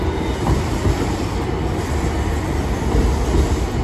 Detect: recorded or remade recorded